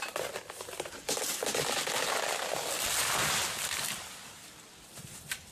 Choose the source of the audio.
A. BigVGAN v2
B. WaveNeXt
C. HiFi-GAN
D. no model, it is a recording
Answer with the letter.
A